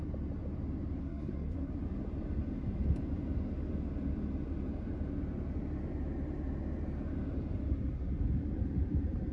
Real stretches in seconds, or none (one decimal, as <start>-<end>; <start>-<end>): 0.0-1.0; 1.7-9.3